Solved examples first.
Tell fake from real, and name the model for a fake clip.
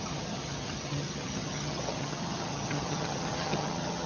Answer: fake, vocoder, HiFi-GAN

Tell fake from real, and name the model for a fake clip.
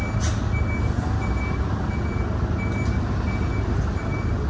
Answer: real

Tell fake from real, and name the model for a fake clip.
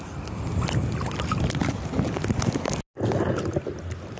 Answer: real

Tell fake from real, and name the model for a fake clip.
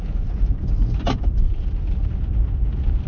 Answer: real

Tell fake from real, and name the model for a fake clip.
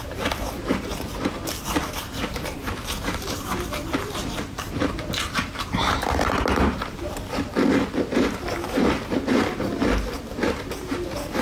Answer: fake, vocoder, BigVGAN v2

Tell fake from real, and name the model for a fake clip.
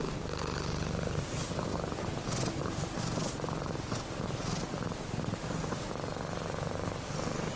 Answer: real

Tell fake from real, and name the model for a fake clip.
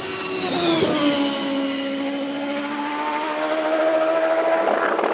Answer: real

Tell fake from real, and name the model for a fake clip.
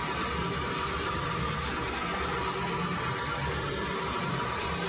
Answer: real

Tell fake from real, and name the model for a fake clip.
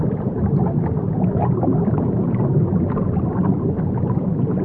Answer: fake, vocoder, BigVGAN v2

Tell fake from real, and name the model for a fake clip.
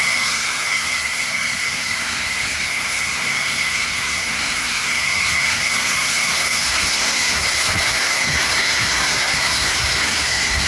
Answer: fake, codec, SNAC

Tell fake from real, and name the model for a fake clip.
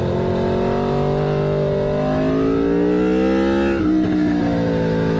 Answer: real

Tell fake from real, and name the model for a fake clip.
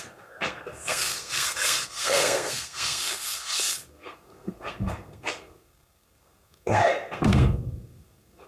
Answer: fake, codec, SNAC